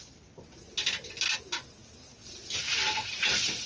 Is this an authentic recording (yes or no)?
yes